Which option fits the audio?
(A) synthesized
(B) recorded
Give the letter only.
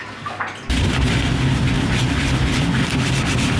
B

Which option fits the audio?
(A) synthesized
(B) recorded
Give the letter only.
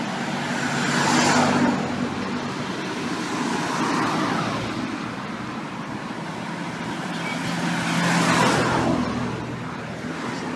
B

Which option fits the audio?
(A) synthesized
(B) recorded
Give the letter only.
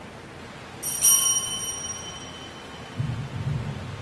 B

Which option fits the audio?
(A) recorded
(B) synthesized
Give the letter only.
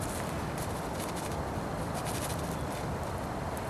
A